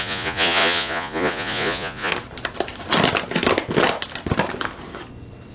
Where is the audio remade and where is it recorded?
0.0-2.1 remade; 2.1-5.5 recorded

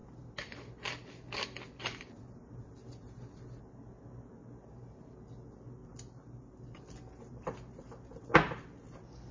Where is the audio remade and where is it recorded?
0.0-9.3 recorded

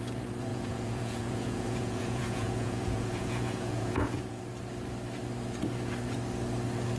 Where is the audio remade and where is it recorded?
0.0-0.5 recorded; 0.5-4.4 remade; 4.4-7.0 recorded

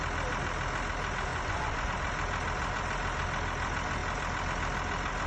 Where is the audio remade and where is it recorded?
0.0-1.3 recorded; 1.3-1.9 remade; 1.9-5.3 recorded

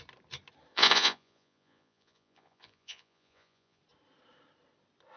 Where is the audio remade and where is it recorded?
0.0-0.7 recorded; 0.7-3.8 remade; 3.8-5.2 recorded

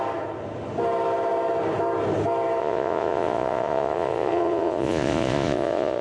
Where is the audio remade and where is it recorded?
0.0-2.6 recorded; 2.6-6.0 remade

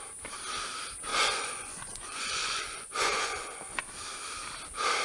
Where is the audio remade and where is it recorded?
0.0-1.1 recorded; 1.1-3.9 remade; 3.9-5.0 recorded

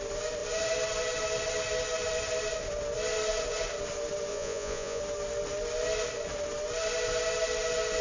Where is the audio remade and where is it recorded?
0.0-4.3 recorded; 4.3-5.0 remade; 5.0-8.0 recorded